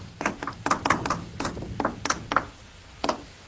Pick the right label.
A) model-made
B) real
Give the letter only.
B